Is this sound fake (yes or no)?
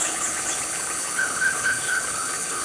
yes